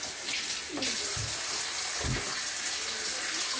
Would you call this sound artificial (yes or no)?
no